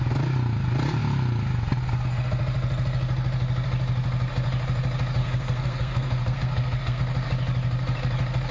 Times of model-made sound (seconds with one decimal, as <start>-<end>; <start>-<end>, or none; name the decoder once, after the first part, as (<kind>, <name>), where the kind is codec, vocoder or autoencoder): 5.2-7.0 (codec, SNAC)